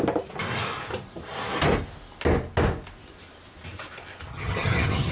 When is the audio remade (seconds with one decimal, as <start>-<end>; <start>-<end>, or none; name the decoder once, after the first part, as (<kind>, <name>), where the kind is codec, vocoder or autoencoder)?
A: 4.3-5.1 (vocoder, HiFi-GAN)